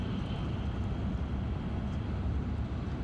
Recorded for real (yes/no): no